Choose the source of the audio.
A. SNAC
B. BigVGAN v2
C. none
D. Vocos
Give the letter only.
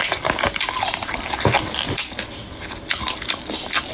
C